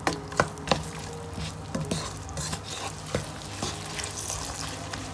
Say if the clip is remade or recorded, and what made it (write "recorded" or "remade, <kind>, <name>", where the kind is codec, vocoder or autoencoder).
recorded